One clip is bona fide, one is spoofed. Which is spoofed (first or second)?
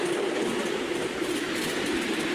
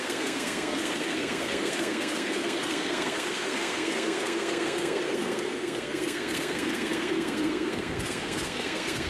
second